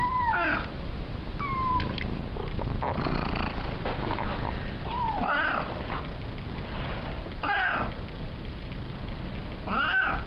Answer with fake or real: real